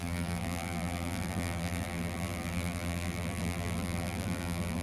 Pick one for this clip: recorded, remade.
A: remade